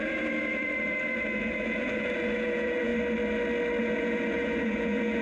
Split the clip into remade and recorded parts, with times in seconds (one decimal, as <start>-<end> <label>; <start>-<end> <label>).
0.0-2.9 remade; 2.9-3.8 recorded; 3.8-5.2 remade